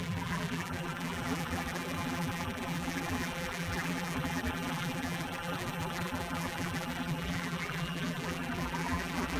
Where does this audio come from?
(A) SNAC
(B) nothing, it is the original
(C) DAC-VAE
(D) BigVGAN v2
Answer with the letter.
D